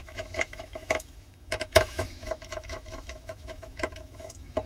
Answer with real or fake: fake